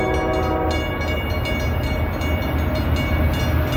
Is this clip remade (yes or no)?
no